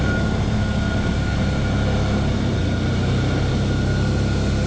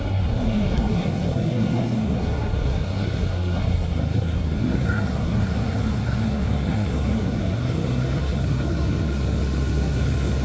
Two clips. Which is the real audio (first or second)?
first